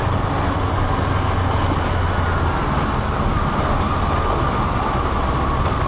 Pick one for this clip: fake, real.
real